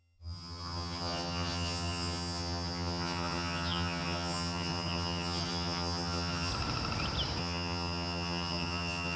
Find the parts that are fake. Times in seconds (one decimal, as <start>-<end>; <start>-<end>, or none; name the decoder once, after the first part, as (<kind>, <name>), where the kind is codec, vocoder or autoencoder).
0.0-6.5 (vocoder, HiFi-GAN); 7.4-9.2